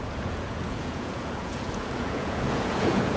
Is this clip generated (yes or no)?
yes